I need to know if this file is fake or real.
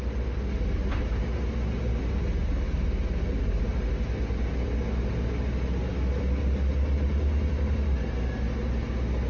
real